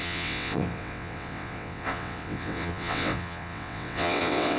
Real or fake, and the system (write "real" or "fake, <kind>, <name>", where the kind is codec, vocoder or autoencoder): fake, vocoder, WaveNeXt